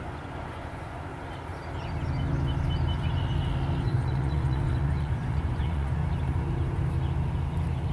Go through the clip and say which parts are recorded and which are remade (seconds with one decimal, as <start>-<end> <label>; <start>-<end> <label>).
0.0-1.1 remade; 1.1-3.8 recorded; 3.8-6.0 remade; 6.0-7.9 recorded